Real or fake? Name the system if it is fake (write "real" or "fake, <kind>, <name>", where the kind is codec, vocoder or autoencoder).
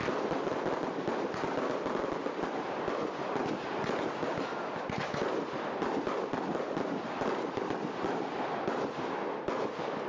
real